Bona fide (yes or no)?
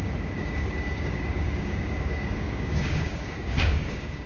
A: no